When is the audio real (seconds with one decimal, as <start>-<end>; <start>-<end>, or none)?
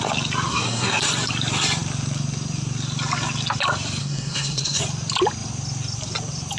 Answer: 0.0-0.5; 1.0-4.0; 4.8-6.6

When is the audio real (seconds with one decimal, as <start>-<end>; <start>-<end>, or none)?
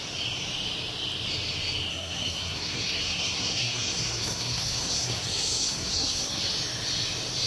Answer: 0.0-1.9; 6.4-7.5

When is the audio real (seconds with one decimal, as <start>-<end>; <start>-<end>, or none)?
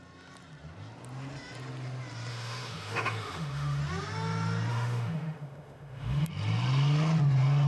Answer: 0.0-2.3; 3.8-4.7; 6.3-7.7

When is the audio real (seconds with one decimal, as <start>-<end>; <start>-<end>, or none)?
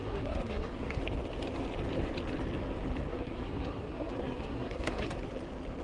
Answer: 1.0-3.1; 5.2-5.8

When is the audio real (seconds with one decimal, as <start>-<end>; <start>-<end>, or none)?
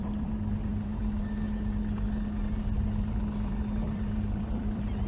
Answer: 0.7-3.8